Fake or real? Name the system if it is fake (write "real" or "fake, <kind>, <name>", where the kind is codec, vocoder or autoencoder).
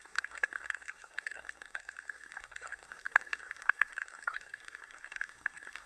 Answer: fake, codec, SNAC